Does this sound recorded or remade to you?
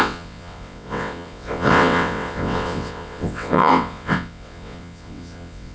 remade